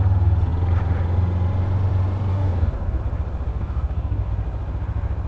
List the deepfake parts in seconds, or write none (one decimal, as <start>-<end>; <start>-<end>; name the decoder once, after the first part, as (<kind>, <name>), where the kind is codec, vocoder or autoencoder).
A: 2.3-3.0 (codec, DAC); 3.5-4.3